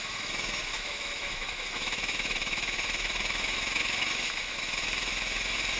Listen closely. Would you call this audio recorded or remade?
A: remade